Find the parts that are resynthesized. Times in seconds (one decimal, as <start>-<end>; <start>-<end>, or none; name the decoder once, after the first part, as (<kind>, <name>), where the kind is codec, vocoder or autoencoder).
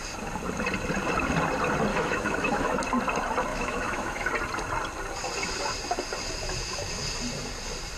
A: 1.9-2.8 (autoencoder, DAC-VAE); 3.5-4.3